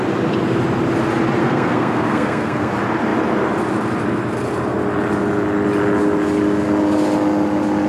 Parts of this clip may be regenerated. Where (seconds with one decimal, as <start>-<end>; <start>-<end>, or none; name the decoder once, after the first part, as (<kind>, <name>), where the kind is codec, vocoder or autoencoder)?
1.4-2.7 (codec, SNAC)